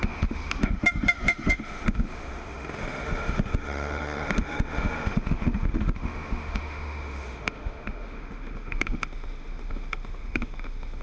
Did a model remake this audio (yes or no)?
yes